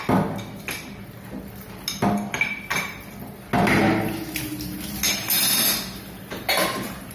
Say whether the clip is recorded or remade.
recorded